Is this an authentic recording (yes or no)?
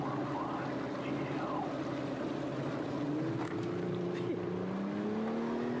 yes